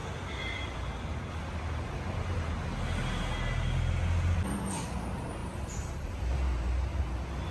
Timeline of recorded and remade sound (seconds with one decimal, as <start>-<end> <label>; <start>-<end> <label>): 0.0-7.5 recorded